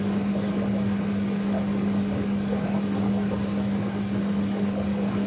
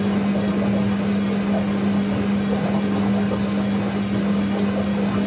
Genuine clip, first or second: second